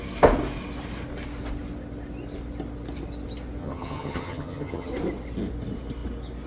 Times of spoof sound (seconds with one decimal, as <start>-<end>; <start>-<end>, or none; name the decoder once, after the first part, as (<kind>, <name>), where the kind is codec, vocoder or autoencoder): 3.6-4.9 (vocoder, HiFi-GAN)